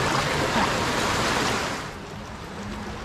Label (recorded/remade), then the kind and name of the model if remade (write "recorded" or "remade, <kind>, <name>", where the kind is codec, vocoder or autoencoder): recorded